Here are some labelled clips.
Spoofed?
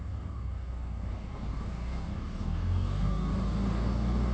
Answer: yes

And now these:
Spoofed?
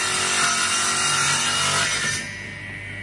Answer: no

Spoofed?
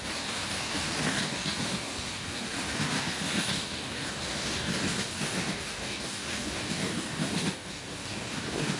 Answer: yes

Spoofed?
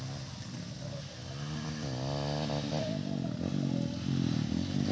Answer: no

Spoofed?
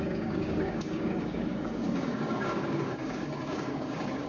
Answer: yes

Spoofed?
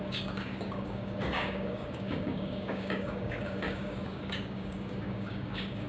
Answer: yes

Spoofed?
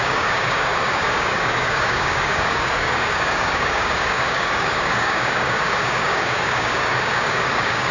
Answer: yes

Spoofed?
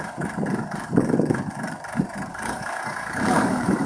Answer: yes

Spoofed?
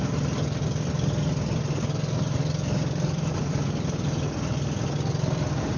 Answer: no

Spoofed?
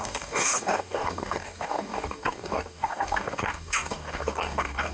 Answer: yes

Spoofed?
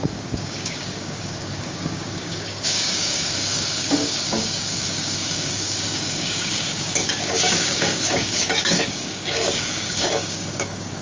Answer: yes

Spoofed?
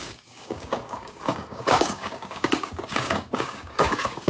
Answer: yes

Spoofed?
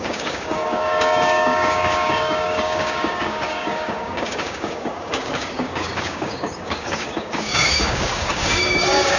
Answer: yes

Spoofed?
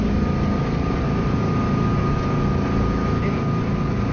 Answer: no